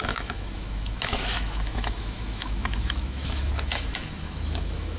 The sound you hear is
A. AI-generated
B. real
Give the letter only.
A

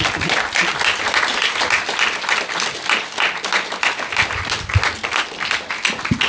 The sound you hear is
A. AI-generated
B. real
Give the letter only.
B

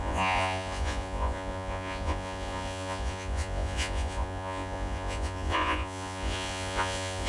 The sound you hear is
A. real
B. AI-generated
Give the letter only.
B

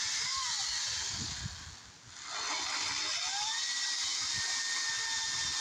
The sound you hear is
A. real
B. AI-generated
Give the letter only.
A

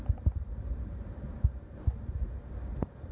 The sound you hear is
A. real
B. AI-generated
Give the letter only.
A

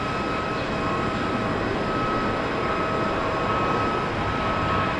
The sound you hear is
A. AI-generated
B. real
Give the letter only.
B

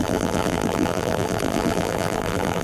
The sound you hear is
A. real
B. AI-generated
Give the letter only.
B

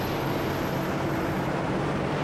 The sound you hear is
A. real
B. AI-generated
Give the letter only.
A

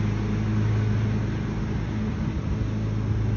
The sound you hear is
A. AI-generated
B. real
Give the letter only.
B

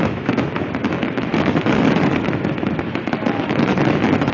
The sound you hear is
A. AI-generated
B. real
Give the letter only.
A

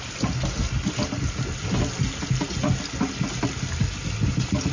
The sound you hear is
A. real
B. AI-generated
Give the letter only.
A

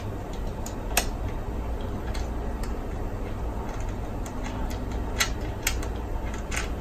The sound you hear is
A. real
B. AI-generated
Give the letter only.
A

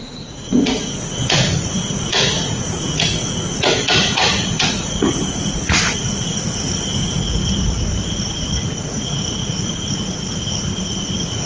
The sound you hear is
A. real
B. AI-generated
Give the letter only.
B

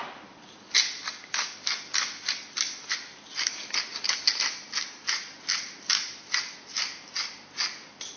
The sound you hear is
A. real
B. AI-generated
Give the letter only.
A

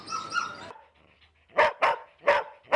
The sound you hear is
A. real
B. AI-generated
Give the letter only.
A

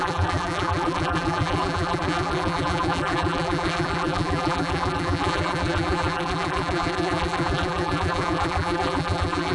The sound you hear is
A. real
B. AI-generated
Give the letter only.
B